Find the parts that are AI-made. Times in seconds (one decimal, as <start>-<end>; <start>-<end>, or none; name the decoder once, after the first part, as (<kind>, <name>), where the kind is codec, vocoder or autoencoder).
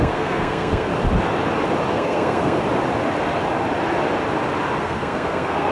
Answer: 0.0-0.9 (codec, SNAC); 1.9-2.6; 4.8-5.7